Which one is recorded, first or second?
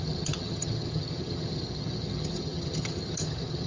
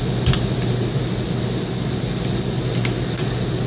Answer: second